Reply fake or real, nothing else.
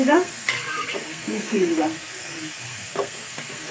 fake